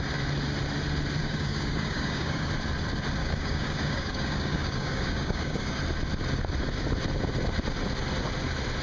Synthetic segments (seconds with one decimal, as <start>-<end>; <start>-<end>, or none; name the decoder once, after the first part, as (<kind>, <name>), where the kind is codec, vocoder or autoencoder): 1.2-2.5 (codec, DAC); 3.2-5.8